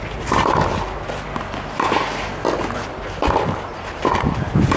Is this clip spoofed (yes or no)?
no